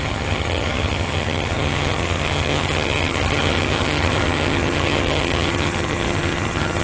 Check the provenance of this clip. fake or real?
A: fake